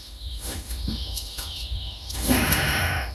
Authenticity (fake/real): fake